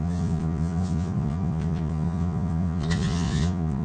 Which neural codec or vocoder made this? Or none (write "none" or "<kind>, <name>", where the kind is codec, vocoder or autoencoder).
vocoder, Vocos